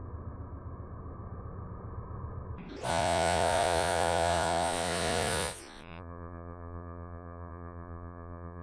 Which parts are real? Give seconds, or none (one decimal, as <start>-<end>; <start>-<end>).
0.0-2.9